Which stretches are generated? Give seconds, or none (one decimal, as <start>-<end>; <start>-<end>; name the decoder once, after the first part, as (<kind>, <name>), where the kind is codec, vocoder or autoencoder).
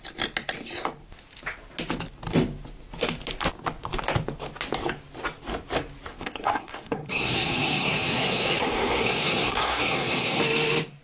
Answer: 6.1-10.4 (codec, SNAC)